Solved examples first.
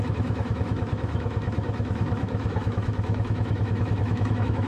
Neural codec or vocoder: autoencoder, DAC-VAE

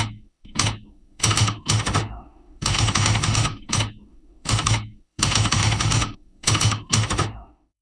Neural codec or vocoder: autoencoder, DAC-VAE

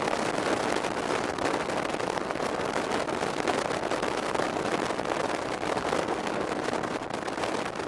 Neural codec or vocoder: none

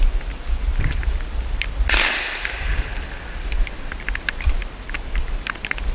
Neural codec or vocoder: none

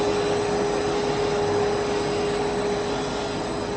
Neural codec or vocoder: none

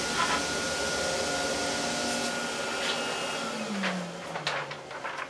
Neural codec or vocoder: none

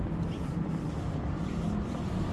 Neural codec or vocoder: none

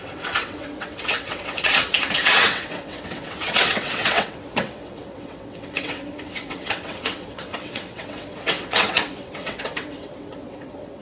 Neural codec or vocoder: vocoder, WaveNeXt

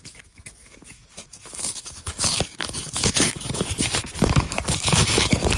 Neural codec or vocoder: codec, DAC